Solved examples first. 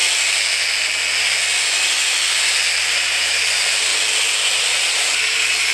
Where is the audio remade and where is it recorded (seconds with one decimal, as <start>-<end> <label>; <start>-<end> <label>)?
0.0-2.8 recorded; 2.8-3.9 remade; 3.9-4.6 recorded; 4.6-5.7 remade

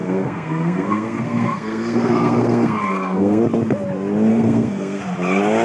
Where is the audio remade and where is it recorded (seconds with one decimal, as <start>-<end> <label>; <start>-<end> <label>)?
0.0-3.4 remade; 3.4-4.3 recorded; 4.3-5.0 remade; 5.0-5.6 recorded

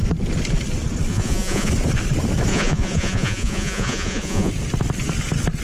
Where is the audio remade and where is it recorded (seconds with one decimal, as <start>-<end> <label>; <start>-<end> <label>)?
0.0-1.1 recorded; 1.1-1.7 remade; 1.7-2.5 recorded; 2.5-4.5 remade; 4.5-5.6 recorded